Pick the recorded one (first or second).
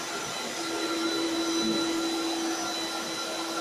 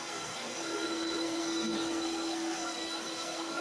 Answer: first